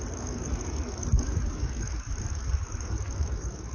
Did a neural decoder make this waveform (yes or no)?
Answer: yes